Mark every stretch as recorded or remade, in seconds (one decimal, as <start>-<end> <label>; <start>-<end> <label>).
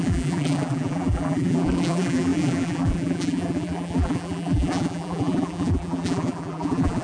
0.0-7.0 remade